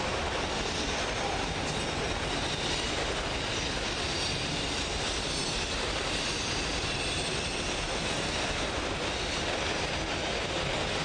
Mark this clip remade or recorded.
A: recorded